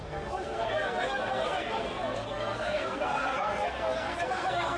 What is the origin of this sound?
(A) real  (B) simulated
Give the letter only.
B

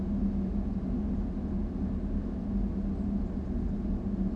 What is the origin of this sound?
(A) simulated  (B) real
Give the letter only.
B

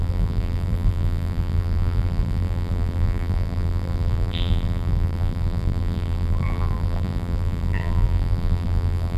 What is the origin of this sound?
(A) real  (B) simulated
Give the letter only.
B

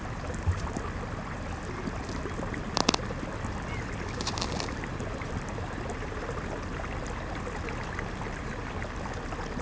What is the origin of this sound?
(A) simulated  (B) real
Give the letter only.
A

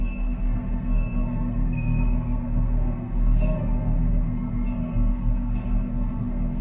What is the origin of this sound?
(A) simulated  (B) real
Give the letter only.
A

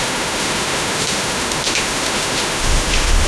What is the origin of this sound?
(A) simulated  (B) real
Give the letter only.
A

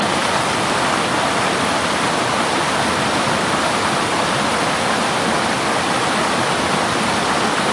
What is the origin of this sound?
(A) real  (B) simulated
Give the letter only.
A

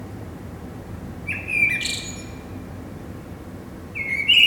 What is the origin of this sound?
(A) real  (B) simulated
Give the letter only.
A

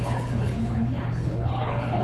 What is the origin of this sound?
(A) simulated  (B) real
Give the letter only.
A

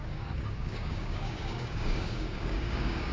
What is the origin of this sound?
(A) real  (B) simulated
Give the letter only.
B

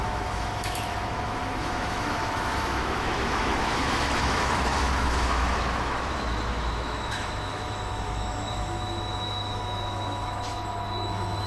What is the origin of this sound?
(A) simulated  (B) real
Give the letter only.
A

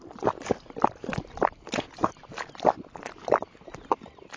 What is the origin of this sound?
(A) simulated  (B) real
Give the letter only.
B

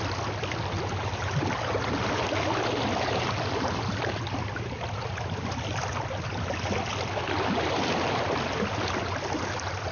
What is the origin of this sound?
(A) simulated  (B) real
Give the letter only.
B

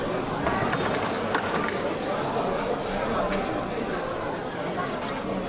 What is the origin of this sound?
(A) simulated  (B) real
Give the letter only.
B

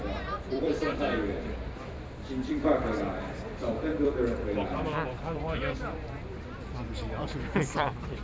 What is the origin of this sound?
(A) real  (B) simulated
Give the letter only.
B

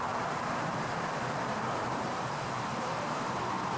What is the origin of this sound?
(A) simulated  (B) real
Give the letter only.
A